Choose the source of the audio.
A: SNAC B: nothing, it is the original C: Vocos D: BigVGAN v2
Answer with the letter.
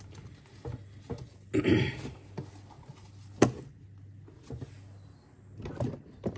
B